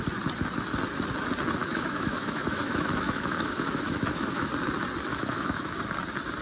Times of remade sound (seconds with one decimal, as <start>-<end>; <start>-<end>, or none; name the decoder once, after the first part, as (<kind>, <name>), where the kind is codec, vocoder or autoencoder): 1.6-4.5 (autoencoder, DAC-VAE); 5.1-5.8